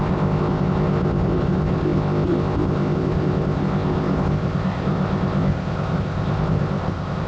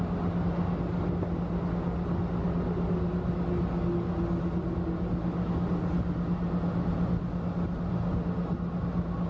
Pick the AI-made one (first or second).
first